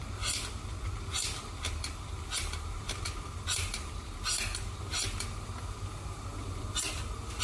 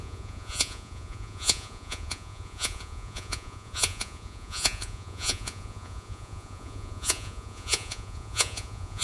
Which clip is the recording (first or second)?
first